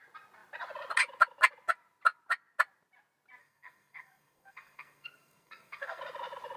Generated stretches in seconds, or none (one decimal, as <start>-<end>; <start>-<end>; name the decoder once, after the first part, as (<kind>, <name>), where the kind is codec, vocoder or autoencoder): 3.4-6.0 (codec, SNAC)